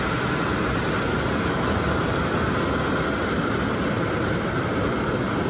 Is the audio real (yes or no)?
yes